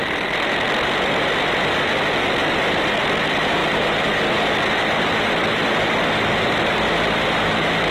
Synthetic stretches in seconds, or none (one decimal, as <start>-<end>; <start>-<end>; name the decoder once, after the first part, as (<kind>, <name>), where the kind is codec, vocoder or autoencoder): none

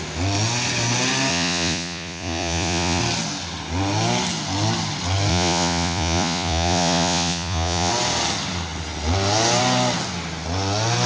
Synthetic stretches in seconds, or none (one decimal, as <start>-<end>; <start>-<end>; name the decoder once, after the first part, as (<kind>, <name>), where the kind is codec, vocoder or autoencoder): 1.3-3.0 (vocoder, Vocos); 5.3-7.9

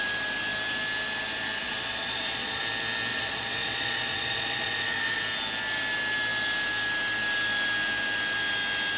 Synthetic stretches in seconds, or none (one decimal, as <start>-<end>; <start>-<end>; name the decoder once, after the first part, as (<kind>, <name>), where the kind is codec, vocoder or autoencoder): 1.6-2.6 (vocoder, Vocos); 3.1-5.2

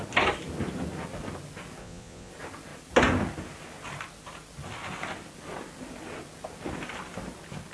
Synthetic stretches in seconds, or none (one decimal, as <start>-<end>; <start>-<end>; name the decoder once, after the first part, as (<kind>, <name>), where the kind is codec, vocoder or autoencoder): 1.8-2.3 (vocoder, Vocos)

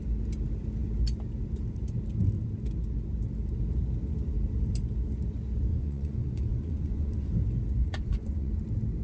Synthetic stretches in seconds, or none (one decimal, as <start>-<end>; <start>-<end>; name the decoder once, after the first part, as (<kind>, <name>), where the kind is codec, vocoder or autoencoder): 5.7-7.3 (vocoder, Vocos); 7.8-8.5

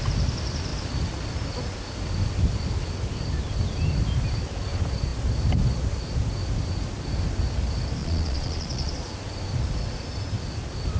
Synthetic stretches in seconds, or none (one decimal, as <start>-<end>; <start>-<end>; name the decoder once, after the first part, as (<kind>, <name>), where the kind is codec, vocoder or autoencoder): 8.0-8.9 (vocoder, Vocos)